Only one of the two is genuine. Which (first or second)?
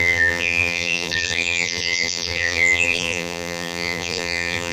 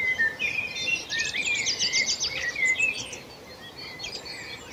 second